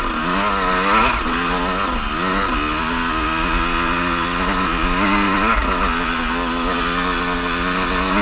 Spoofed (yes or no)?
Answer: no